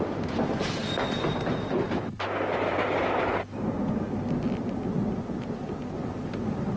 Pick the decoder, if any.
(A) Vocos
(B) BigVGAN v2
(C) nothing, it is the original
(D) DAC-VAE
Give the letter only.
C